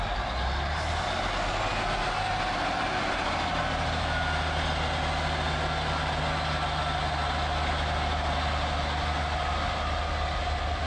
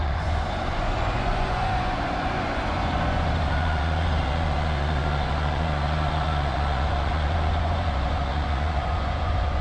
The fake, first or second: second